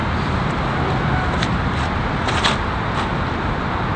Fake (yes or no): no